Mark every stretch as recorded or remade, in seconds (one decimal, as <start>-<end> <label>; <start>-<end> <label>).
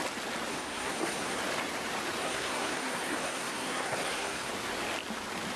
0.0-0.5 recorded; 0.5-1.4 remade; 1.4-2.2 recorded; 2.2-4.5 remade; 4.5-5.6 recorded